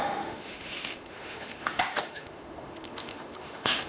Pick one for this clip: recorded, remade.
remade